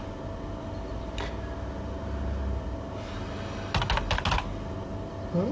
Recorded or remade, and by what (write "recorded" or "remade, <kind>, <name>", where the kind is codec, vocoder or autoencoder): recorded